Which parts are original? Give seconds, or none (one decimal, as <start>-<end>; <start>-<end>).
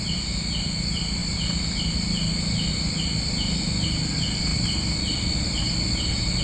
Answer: 0.0-6.4